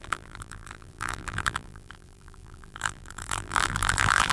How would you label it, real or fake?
fake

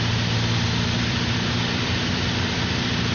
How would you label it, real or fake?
fake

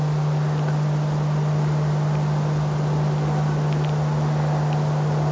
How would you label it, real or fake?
real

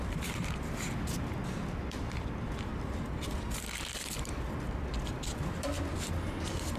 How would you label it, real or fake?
fake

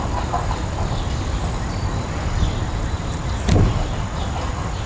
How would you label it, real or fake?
real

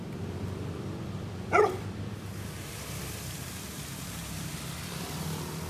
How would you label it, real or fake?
fake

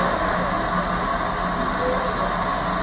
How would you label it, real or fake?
real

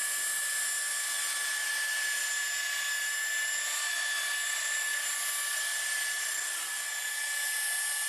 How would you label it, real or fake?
real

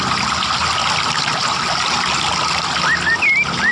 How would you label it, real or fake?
real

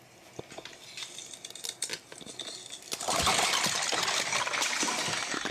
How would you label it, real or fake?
real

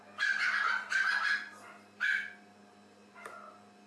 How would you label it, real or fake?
real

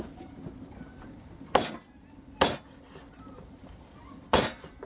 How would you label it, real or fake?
real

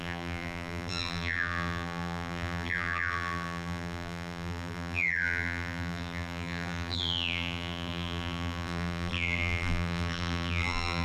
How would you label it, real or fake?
fake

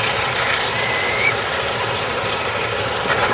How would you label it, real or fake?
fake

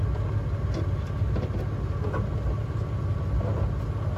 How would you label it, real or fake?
real